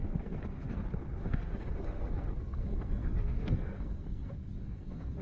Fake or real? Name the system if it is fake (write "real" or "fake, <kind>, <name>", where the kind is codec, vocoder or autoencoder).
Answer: fake, codec, SNAC